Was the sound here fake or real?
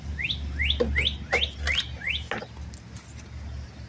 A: real